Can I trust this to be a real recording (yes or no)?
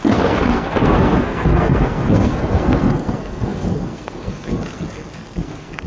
no